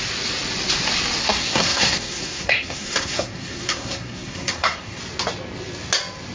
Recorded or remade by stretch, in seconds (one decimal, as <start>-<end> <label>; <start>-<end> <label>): 0.0-1.2 recorded; 1.2-5.0 remade; 5.0-6.3 recorded